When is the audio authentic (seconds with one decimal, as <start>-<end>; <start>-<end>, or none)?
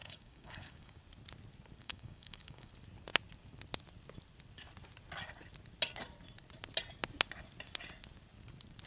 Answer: 1.0-1.8; 2.7-8.9